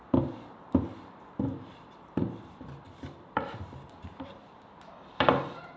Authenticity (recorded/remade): remade